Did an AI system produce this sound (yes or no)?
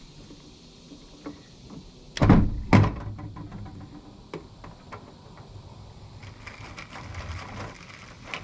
no